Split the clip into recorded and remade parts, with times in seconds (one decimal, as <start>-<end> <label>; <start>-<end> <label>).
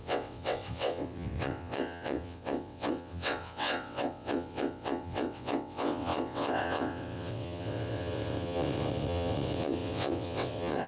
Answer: 0.0-10.9 remade